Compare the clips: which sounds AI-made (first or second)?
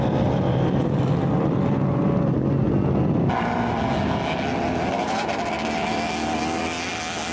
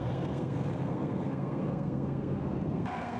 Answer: second